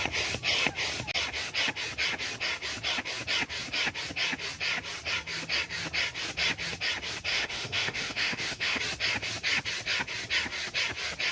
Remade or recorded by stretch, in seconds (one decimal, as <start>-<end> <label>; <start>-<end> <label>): 0.0-7.3 recorded; 7.3-8.8 remade; 8.8-11.3 recorded